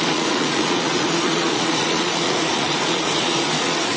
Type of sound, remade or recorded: remade